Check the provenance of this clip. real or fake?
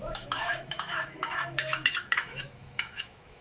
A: fake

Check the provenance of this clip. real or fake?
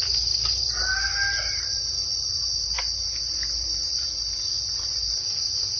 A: real